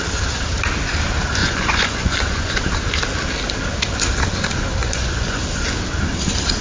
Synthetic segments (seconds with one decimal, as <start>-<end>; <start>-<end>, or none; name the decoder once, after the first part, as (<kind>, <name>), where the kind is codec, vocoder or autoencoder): 1.4-2.5 (vocoder, Vocos); 4.8-5.4